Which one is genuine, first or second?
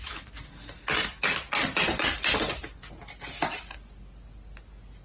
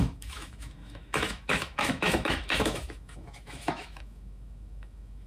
first